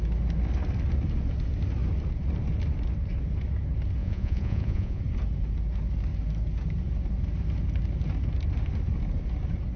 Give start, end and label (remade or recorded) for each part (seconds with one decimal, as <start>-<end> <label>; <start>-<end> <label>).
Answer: 0.0-4.0 recorded; 4.0-5.0 remade; 5.0-9.8 recorded